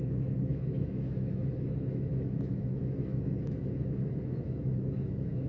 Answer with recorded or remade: remade